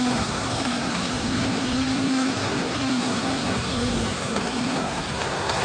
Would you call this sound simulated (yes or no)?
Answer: yes